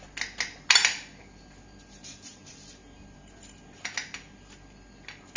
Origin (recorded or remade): recorded